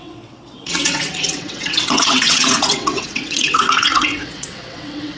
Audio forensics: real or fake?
fake